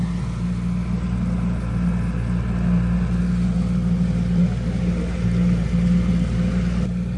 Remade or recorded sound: recorded